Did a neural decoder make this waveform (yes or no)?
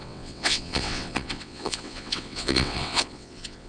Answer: yes